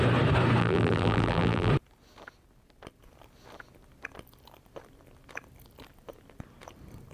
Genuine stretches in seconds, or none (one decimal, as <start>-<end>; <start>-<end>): 0.0-0.6; 1.7-7.1